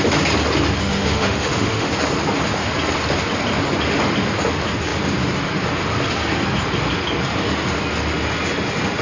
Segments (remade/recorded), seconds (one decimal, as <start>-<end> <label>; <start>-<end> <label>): 0.0-0.8 recorded; 0.8-1.9 remade; 1.9-9.0 recorded